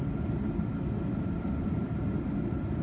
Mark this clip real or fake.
real